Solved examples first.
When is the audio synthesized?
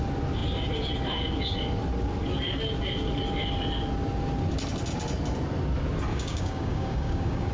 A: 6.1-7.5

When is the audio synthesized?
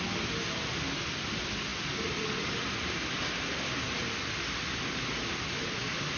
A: none